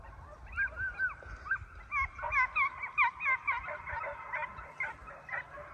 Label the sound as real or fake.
real